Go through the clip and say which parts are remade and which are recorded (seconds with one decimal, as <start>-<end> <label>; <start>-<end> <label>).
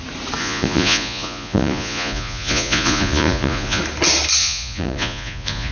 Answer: 0.0-0.4 recorded; 0.4-3.8 remade; 3.8-4.4 recorded; 4.4-5.7 remade